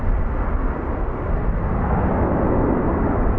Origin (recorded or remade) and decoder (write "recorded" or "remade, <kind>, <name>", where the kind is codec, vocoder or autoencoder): recorded